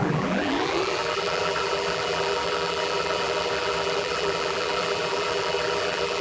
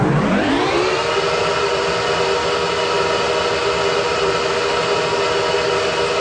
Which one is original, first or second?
second